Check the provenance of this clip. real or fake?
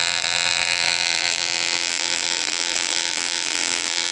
fake